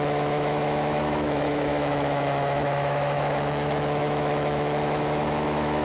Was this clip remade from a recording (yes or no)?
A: yes